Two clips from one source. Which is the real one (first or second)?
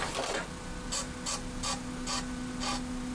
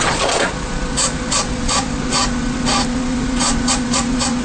first